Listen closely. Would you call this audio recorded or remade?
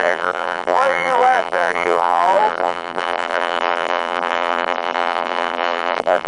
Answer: remade